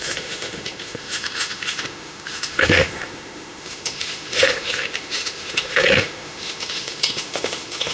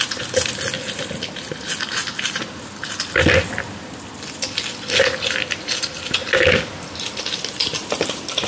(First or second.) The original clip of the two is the second